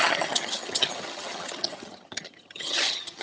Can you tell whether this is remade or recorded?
remade